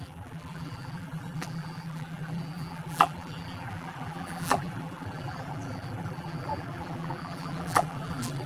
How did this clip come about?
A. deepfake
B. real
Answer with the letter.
A